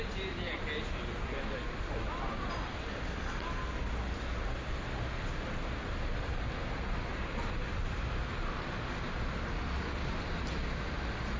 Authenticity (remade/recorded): recorded